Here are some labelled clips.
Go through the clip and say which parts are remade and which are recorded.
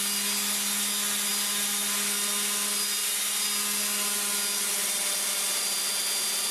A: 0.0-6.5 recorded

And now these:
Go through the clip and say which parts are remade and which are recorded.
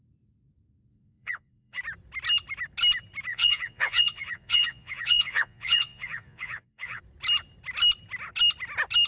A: 0.0-0.9 recorded; 0.9-1.8 remade; 1.8-3.3 recorded; 3.3-7.0 remade; 7.0-9.1 recorded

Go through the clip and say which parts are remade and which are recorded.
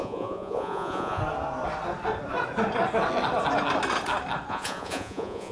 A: 0.0-1.2 remade; 1.2-4.5 recorded; 4.5-5.5 remade